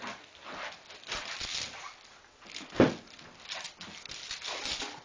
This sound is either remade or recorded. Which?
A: recorded